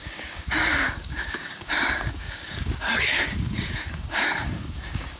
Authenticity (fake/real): fake